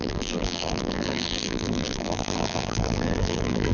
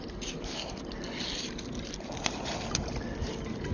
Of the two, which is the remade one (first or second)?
first